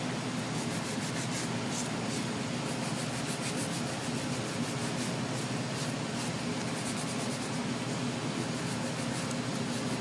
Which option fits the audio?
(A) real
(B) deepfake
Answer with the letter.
A